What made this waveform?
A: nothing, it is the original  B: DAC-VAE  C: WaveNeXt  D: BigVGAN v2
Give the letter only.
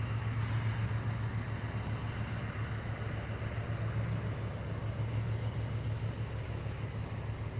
A